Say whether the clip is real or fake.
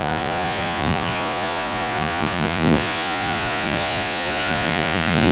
fake